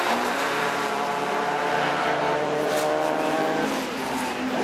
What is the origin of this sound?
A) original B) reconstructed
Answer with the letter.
B